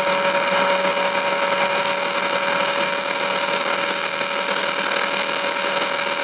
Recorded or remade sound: recorded